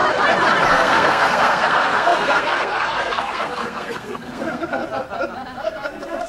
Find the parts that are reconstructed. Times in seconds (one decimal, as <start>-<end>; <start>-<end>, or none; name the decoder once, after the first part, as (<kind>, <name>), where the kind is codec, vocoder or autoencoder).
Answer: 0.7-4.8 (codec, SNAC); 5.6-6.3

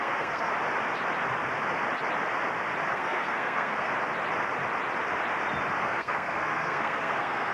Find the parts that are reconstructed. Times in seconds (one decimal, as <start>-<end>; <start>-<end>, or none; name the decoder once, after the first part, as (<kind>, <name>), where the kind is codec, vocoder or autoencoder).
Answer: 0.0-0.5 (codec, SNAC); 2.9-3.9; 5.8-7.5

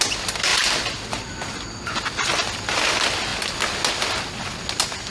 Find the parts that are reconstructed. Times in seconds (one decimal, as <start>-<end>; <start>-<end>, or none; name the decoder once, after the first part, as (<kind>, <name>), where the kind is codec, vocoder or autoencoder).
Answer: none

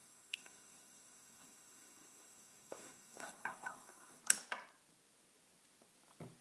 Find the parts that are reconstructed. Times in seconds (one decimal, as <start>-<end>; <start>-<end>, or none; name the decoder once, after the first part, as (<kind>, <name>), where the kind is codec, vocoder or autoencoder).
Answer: 0.0-4.2 (codec, SNAC)